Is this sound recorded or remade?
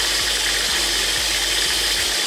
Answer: recorded